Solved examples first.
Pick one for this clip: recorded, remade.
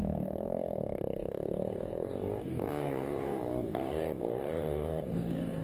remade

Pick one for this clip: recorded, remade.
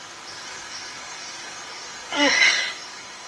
remade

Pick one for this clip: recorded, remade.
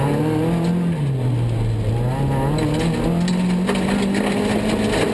recorded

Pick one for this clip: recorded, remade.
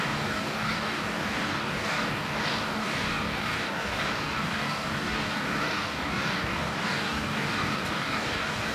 remade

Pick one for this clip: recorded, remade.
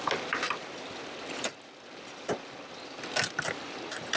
recorded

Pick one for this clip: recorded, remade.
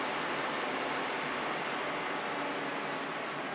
recorded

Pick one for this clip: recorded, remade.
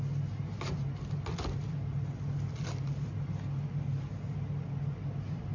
recorded